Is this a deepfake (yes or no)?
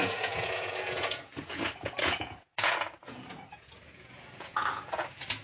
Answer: yes